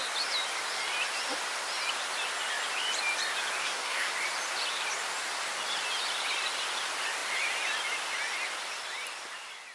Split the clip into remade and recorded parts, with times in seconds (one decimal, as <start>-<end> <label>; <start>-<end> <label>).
0.0-3.6 recorded; 3.6-4.1 remade; 4.1-9.7 recorded